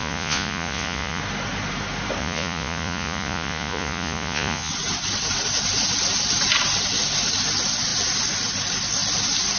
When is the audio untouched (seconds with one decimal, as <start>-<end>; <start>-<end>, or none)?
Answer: 1.2-2.2; 4.7-9.6